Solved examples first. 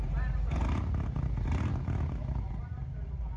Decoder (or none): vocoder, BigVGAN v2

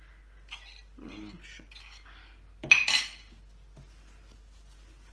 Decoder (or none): none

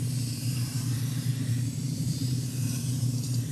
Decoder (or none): vocoder, BigVGAN v2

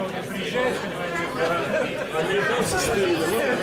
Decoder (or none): none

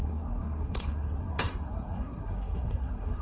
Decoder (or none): codec, SNAC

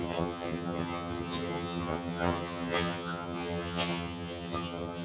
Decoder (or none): vocoder, HiFi-GAN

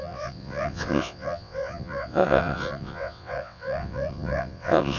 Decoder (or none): vocoder, WaveNeXt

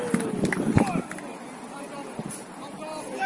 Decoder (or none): none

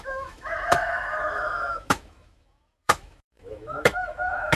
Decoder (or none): autoencoder, DAC-VAE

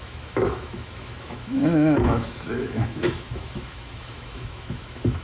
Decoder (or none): autoencoder, DAC-VAE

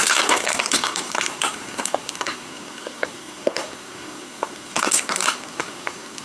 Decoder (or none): codec, SNAC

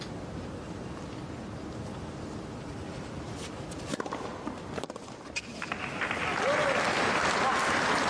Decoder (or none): none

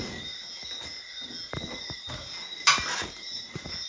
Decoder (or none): none